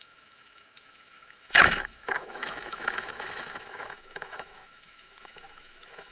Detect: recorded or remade remade